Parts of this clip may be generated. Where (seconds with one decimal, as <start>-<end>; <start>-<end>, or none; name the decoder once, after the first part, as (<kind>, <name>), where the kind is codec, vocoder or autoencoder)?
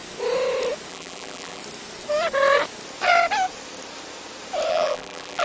0.9-1.6 (vocoder, BigVGAN v2); 4.7-5.4